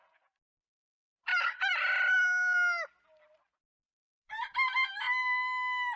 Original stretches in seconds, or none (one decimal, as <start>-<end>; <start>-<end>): 0.0-6.0